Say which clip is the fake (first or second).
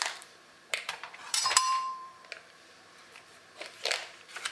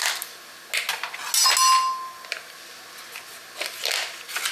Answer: first